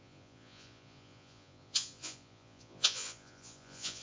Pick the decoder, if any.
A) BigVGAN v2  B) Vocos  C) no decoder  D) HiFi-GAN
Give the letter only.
B